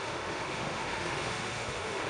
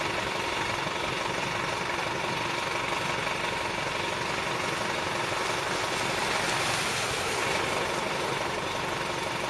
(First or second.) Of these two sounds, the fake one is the first